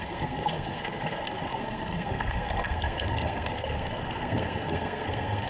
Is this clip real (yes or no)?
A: no